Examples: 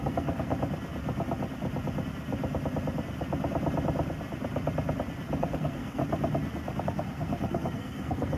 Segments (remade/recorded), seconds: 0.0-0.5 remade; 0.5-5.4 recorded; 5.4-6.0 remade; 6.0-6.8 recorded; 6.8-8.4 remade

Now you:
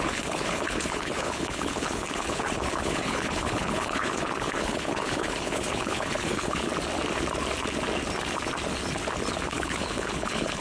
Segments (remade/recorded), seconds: 0.0-6.7 remade; 6.7-9.5 recorded; 9.5-10.6 remade

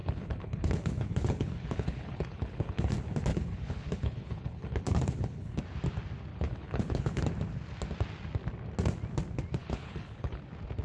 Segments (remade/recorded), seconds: 0.0-2.9 remade; 2.9-3.3 recorded; 3.3-5.6 remade; 5.6-6.3 recorded; 6.3-7.2 remade; 7.2-9.6 recorded; 9.6-10.4 remade; 10.4-10.8 recorded